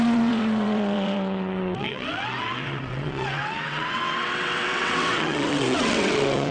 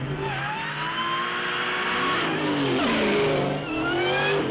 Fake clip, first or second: first